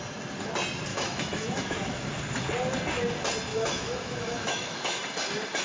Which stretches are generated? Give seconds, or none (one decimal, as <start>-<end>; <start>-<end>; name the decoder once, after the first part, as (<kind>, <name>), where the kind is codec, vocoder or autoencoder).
0.9-2.1 (autoencoder, DAC-VAE); 3.5-5.0